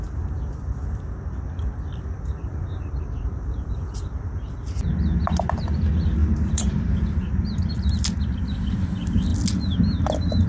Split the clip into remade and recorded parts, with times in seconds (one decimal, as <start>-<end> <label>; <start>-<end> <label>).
0.0-2.4 recorded; 2.4-4.5 remade; 4.5-6.2 recorded; 6.2-7.7 remade; 7.7-10.5 recorded